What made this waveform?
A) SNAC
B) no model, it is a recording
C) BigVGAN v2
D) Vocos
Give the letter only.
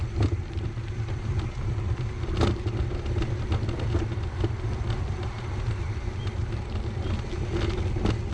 B